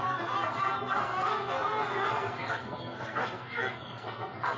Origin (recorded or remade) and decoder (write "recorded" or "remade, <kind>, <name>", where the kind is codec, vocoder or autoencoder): remade, codec, SNAC